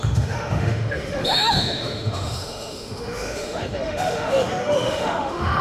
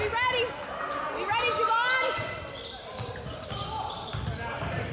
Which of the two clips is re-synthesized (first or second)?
first